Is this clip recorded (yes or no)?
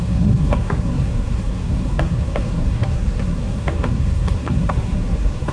no